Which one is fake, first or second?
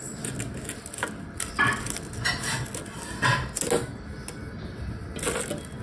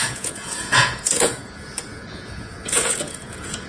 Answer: second